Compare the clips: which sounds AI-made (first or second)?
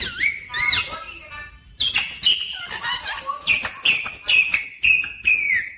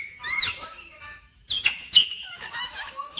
second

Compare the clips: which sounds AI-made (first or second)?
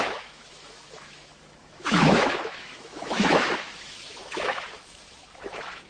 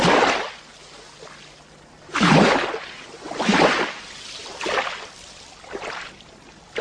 first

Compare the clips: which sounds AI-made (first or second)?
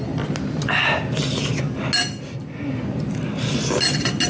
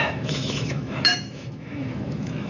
second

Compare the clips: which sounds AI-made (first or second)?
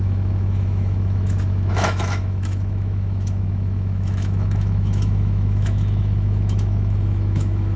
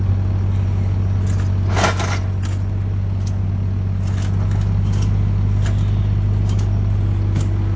first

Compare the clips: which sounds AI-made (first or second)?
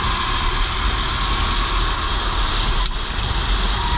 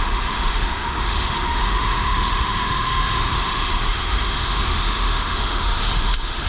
second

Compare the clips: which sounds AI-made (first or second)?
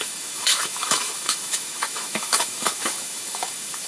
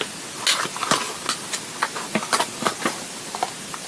first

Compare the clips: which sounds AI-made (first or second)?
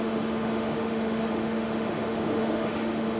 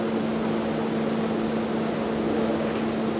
first